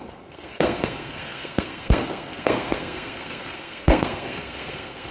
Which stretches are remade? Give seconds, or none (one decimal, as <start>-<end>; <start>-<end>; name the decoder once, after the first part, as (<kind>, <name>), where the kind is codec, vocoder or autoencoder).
0.0-5.1 (codec, SNAC)